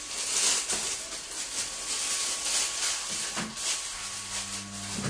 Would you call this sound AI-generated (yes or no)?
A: no